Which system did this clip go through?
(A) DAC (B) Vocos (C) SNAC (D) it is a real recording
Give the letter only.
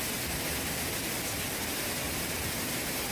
D